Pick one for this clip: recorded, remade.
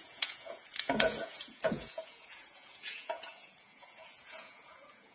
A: remade